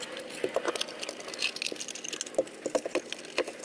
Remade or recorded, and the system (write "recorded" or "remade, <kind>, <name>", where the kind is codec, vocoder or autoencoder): recorded